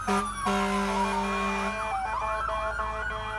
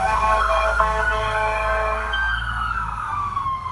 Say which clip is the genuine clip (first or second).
first